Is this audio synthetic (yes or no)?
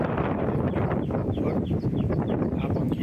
yes